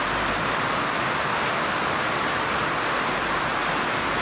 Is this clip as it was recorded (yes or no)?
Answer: yes